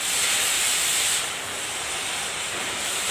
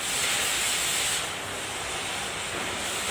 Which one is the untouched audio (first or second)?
second